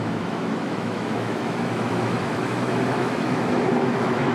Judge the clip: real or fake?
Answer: fake